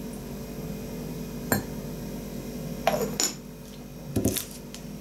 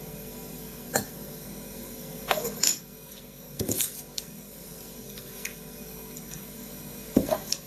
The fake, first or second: second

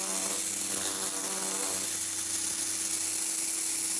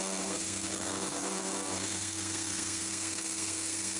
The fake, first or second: second